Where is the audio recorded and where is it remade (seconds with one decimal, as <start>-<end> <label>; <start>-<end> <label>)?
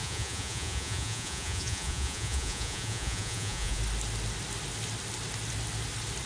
0.0-3.8 remade; 3.8-6.3 recorded